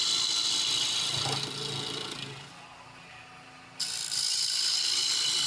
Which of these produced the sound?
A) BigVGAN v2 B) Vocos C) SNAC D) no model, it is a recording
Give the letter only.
D